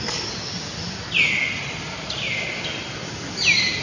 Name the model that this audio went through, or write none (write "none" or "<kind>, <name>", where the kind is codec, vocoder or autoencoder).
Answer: none